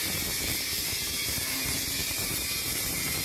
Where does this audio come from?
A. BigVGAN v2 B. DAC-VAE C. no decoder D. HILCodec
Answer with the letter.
A